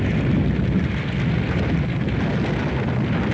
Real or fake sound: real